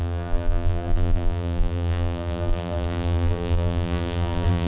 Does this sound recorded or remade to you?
remade